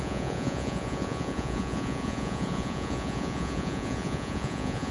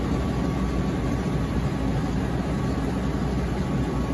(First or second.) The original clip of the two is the second